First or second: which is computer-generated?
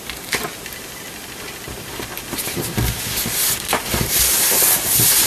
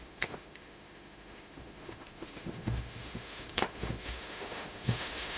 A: second